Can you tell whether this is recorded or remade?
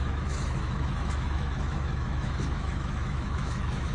remade